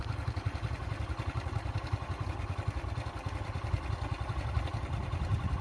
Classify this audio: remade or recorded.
recorded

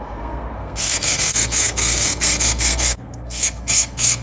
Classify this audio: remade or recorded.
remade